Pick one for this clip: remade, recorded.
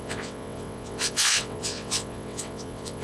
remade